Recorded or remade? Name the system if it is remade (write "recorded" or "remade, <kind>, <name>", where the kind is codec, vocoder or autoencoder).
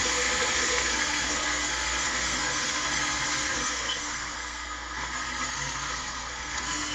remade, codec, SNAC